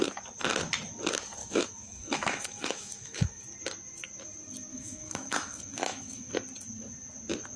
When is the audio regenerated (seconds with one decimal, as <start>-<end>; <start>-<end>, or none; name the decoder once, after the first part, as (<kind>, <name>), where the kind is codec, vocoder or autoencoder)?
1.4-3.4 (autoencoder, DAC-VAE); 4.7-6.3